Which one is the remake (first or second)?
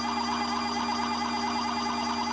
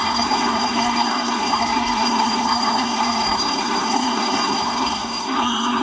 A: second